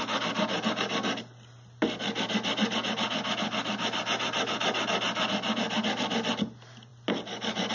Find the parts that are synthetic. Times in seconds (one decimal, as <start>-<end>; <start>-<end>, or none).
none